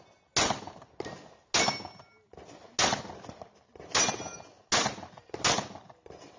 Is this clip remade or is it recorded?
recorded